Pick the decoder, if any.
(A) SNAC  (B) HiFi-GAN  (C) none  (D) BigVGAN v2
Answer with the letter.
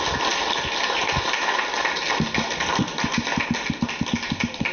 C